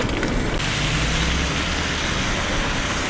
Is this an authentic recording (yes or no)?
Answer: yes